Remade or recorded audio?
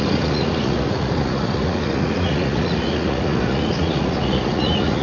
remade